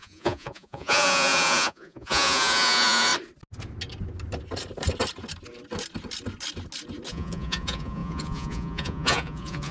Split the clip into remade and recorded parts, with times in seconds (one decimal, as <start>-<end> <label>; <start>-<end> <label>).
0.0-3.1 remade; 3.1-7.1 recorded; 7.1-9.7 remade